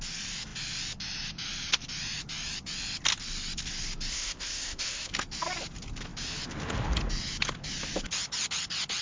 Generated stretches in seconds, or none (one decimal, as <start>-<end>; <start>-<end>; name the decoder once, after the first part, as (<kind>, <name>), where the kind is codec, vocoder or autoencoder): 4.1-5.1 (codec, ZipCodec)